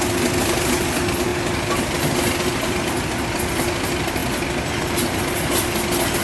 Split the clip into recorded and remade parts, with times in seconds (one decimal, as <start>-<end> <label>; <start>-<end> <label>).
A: 0.0-6.2 recorded